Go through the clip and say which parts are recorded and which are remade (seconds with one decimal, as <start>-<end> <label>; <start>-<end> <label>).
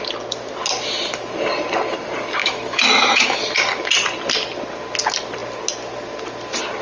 0.0-2.4 recorded; 2.4-3.4 remade; 3.4-6.8 recorded